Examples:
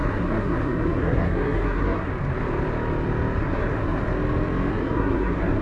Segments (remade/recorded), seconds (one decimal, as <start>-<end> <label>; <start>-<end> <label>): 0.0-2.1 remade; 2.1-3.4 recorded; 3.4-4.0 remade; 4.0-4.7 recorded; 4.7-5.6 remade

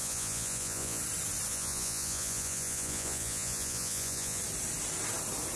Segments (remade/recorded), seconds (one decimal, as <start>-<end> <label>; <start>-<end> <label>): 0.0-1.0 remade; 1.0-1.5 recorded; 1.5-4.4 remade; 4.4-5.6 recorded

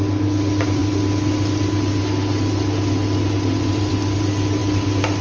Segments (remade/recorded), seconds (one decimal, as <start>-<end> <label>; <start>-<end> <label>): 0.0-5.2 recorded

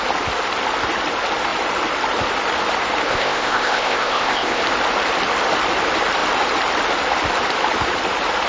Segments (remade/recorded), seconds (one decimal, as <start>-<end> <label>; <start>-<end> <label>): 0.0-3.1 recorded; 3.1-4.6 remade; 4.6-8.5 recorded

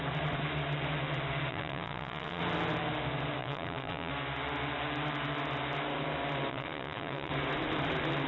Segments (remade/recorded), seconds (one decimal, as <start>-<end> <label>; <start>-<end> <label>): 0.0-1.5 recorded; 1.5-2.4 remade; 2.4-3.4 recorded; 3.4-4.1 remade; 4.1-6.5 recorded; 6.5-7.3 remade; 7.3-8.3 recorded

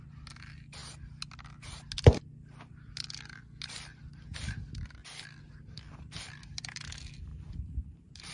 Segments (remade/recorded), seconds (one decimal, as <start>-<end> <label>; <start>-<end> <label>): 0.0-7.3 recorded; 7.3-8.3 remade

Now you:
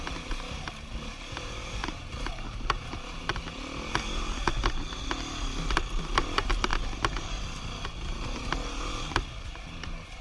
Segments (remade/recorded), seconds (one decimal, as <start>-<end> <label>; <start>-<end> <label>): 0.0-3.3 remade; 3.3-6.1 recorded; 6.1-6.7 remade; 6.7-8.8 recorded; 8.8-10.2 remade